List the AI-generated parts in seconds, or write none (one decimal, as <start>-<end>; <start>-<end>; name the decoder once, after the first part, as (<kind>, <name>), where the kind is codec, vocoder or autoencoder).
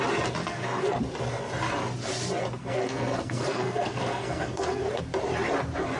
0.4-1.0 (codec, SNAC); 2.6-5.0